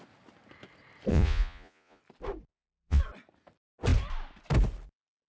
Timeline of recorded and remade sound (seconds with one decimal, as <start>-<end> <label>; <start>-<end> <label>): 0.0-1.1 recorded; 1.1-2.0 remade; 2.0-2.5 recorded; 2.5-3.0 remade; 3.0-5.3 recorded